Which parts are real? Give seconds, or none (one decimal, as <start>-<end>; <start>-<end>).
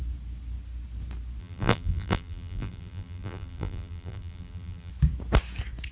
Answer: 0.0-1.4; 4.9-5.9